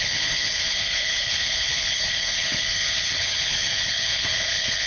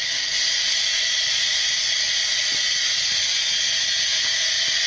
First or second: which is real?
second